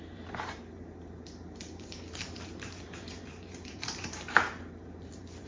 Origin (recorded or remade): remade